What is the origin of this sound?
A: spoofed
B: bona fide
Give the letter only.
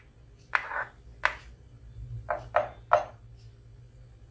B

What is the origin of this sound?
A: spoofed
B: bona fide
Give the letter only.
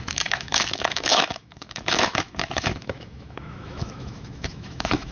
A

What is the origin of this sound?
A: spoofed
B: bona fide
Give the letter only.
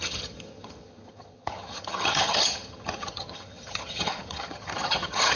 A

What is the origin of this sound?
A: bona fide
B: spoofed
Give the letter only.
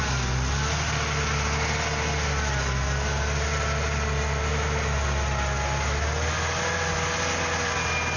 A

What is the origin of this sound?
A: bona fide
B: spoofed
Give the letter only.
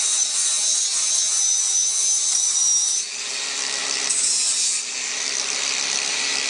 B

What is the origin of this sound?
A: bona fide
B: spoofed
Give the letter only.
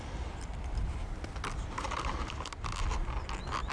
A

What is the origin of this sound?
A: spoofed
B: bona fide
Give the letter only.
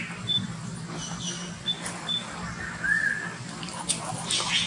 B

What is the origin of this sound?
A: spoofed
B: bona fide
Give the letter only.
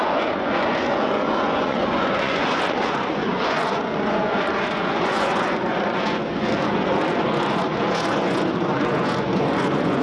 A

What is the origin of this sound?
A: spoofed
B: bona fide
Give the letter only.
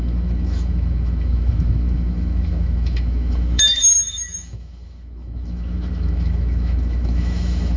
A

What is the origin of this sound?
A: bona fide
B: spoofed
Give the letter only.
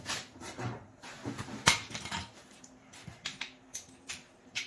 B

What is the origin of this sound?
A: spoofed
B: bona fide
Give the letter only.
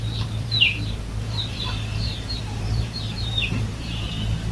A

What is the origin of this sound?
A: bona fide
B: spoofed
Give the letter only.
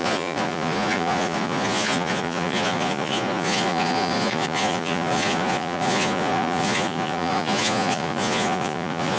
B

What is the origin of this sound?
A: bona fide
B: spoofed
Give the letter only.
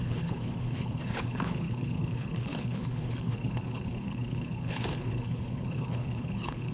B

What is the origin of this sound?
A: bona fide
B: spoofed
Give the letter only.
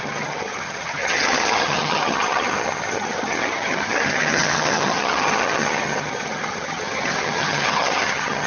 B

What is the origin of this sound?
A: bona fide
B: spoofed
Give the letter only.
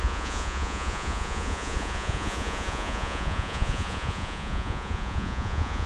B